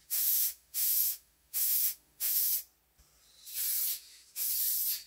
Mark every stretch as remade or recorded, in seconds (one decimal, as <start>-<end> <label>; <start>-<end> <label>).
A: 0.0-2.5 remade; 2.5-3.9 recorded; 3.9-4.5 remade; 4.5-5.1 recorded